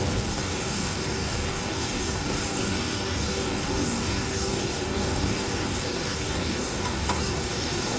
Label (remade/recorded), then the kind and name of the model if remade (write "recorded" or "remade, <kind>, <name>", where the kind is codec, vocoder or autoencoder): remade, codec, DAC